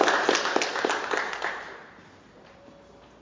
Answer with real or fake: real